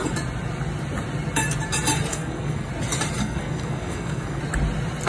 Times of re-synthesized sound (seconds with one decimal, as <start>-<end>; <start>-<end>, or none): 2.1-2.7; 3.2-4.4